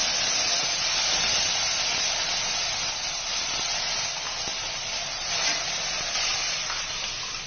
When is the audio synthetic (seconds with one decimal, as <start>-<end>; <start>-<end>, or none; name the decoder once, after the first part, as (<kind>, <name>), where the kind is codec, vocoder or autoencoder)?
none